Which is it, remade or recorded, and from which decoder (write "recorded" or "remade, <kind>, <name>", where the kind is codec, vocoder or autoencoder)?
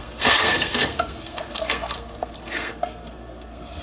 remade, codec, SNAC